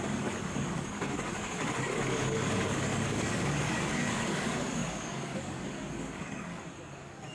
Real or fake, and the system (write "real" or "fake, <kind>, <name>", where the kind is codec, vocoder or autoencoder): fake, codec, DAC